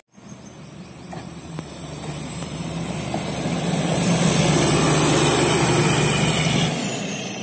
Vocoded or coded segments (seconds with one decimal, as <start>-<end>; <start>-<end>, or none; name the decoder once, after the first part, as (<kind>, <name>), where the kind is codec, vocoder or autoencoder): 1.2-2.9 (vocoder, BigVGAN v2)